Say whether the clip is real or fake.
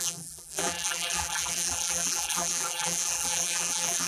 fake